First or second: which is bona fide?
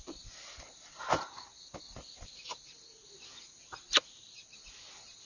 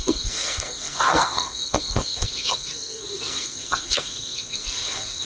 first